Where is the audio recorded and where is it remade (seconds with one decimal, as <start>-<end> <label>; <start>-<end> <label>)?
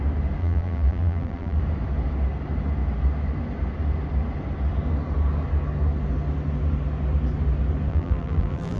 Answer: 0.0-0.4 recorded; 0.4-1.6 remade; 1.6-7.9 recorded; 7.9-8.8 remade